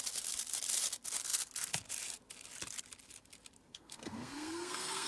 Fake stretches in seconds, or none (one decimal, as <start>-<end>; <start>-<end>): 3.7-5.1